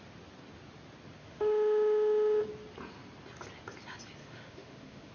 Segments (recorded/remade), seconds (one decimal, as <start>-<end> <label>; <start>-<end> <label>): 0.0-1.2 recorded; 1.2-2.5 remade; 2.5-4.2 recorded; 4.2-5.1 remade